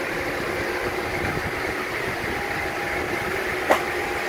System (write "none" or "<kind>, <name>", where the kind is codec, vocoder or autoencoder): none